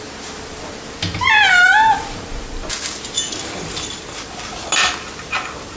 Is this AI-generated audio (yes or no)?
no